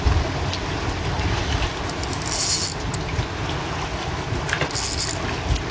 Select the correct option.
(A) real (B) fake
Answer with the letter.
A